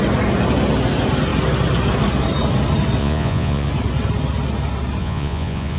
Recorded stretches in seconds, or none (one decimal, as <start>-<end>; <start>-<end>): 0.0-3.0; 3.7-5.0